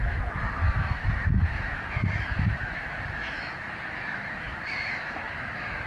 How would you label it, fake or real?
fake